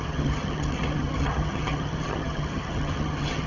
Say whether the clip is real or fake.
fake